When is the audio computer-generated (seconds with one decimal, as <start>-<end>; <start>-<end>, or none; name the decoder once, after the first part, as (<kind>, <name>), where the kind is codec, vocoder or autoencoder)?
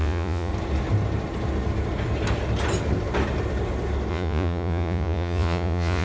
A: 0.0-0.5 (vocoder, Vocos); 4.1-6.0